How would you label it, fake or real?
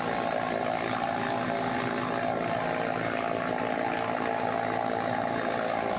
real